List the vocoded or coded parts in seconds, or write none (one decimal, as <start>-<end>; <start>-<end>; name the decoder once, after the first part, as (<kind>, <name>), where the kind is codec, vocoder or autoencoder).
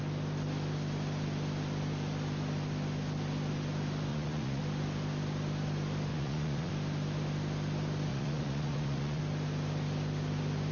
4.1-4.6 (vocoder, Vocos); 6.1-6.7; 8.1-9.2